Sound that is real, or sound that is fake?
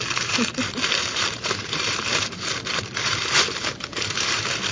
fake